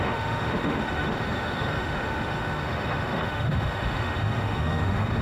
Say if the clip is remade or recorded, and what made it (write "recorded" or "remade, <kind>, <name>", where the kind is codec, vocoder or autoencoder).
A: remade, autoencoder, DAC-VAE